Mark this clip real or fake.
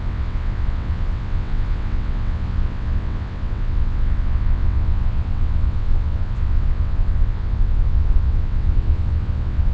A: fake